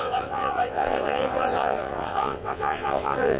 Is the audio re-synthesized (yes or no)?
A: yes